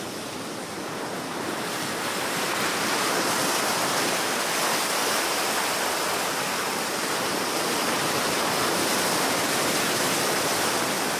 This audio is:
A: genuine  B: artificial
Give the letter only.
A